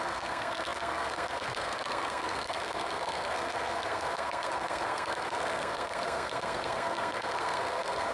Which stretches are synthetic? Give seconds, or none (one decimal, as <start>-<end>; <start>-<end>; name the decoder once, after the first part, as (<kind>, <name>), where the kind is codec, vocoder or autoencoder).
0.0-8.1 (codec, SNAC)